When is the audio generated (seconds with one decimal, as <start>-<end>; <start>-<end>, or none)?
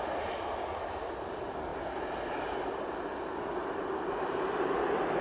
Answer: none